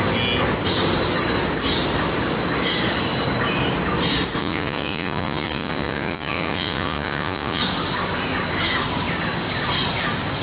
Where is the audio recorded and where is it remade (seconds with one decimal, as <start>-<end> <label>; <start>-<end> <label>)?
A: 0.0-4.4 recorded; 4.4-7.6 remade; 7.6-10.4 recorded